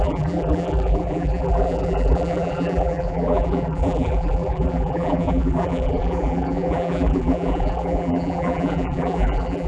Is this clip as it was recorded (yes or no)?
no